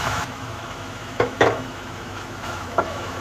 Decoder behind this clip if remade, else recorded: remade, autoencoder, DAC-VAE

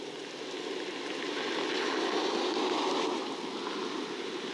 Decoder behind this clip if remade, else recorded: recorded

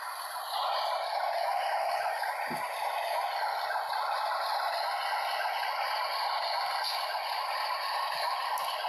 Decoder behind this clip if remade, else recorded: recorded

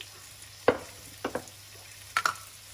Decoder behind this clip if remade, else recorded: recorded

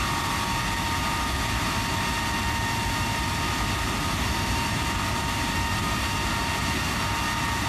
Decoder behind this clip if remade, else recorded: recorded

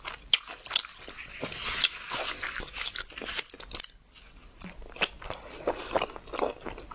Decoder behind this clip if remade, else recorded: recorded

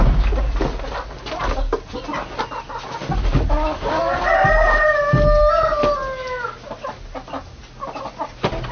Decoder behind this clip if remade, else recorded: recorded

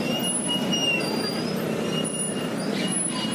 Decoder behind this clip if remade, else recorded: recorded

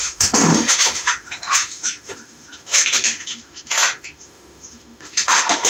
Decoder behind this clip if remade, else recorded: remade, autoencoder, DAC-VAE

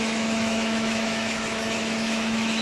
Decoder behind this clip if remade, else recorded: remade, autoencoder, DAC-VAE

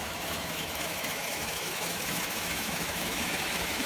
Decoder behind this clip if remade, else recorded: remade, autoencoder, DAC-VAE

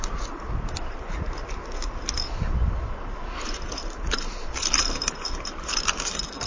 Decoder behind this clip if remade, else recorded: recorded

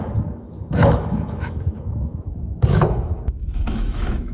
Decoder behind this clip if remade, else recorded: remade, autoencoder, DAC-VAE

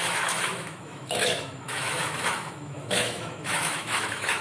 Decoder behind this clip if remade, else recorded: remade, autoencoder, DAC-VAE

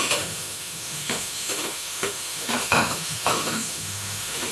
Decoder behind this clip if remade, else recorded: remade, autoencoder, DAC-VAE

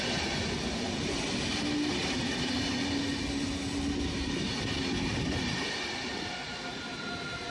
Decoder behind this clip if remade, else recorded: recorded